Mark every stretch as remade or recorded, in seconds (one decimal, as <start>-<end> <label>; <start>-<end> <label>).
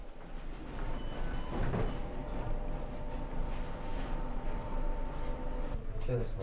0.0-2.0 remade; 2.0-3.9 recorded; 3.9-4.7 remade; 4.7-6.4 recorded